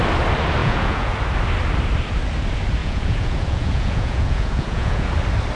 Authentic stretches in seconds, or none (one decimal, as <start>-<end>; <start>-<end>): 0.0-0.6; 1.1-2.8; 5.1-5.6